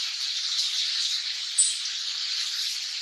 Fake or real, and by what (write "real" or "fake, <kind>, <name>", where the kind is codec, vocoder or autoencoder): real